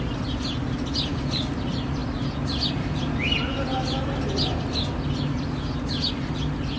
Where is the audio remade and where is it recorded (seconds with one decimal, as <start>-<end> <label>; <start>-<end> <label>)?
0.0-6.8 recorded